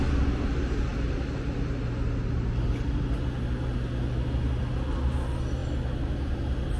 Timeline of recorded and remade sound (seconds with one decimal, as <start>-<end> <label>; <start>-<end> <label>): 0.0-6.8 recorded

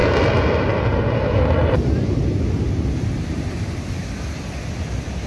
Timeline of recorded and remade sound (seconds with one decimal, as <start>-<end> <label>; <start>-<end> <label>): 0.0-5.3 recorded

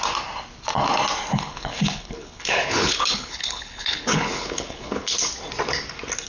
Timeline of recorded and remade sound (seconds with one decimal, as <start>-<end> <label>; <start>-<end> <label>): 0.0-1.3 recorded; 1.3-5.1 remade; 5.1-6.3 recorded

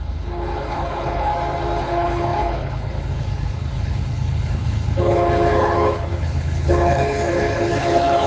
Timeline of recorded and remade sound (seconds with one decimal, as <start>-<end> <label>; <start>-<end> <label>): 0.0-1.3 remade; 1.3-1.8 recorded; 1.8-8.3 remade

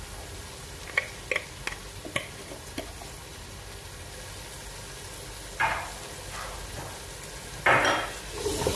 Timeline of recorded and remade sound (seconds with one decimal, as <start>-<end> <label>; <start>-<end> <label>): 0.0-8.8 recorded

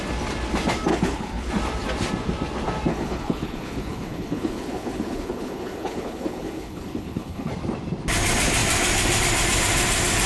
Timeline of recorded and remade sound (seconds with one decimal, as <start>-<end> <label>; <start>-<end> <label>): 0.0-0.9 recorded; 0.9-1.5 remade; 1.5-2.9 recorded; 2.9-7.5 remade; 7.5-10.3 recorded

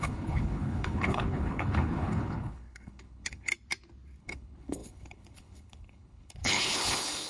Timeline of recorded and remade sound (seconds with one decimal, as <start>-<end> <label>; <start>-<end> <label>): 0.0-3.5 remade; 3.5-4.2 recorded; 4.2-7.3 remade